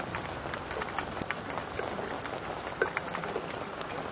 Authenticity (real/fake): fake